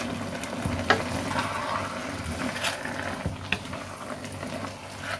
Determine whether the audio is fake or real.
real